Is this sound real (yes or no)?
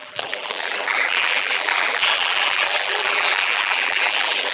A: no